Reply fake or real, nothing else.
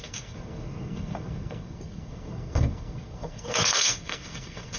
fake